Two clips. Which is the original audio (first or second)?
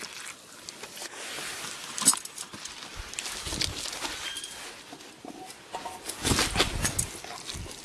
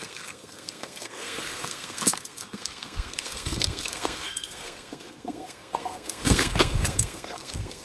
first